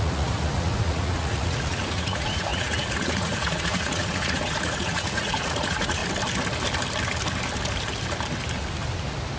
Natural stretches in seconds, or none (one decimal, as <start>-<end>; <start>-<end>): 6.0-9.4